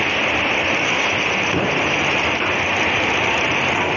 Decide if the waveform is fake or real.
real